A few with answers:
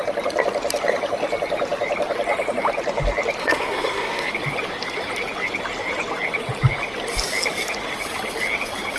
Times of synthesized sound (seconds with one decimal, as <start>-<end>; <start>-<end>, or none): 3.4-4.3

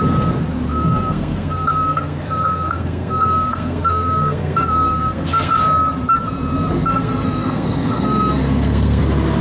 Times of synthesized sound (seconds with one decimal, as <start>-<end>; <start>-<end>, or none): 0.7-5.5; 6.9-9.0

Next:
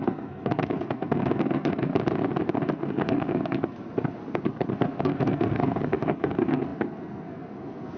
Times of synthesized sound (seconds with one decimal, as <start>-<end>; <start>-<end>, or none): 0.0-1.9; 2.5-8.0